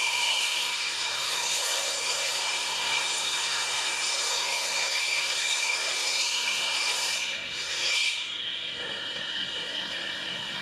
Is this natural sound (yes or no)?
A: no